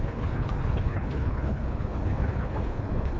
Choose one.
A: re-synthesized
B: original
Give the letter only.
A